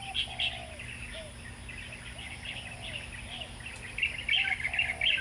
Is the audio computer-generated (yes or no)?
no